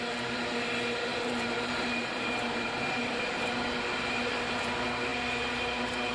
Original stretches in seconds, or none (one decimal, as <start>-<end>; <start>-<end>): 0.0-1.1; 2.8-6.1